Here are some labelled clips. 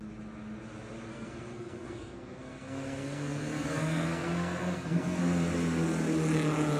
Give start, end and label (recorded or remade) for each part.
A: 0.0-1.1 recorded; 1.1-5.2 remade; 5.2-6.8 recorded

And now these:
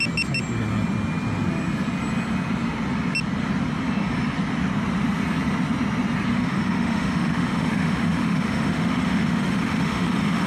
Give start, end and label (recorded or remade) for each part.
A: 0.0-6.3 recorded; 6.3-10.5 remade